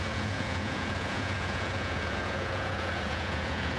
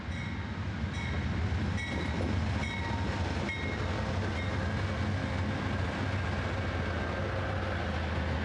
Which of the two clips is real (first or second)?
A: second